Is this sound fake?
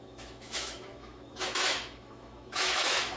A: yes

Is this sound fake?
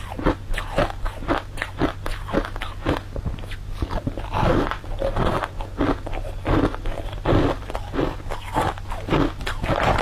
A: no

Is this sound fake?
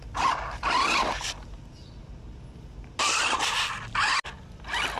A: no